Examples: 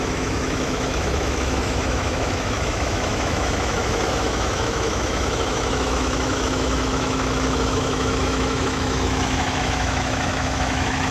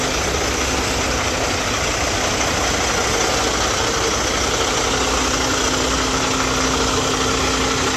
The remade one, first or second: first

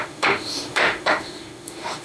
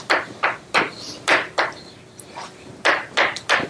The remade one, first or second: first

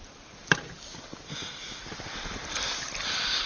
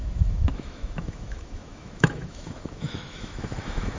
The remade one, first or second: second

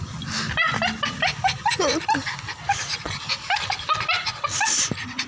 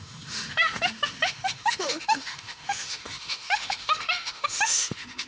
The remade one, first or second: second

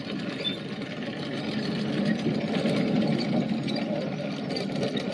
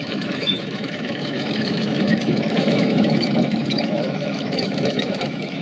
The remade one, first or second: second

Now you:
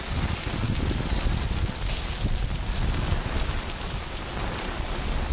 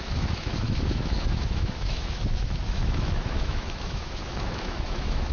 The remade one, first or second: second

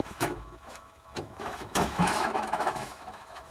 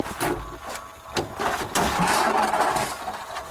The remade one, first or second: first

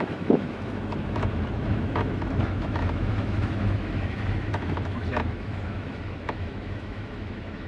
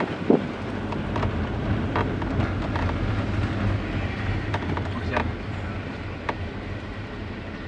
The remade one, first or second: first